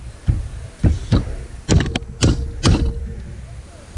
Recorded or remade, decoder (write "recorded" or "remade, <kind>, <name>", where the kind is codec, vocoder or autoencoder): recorded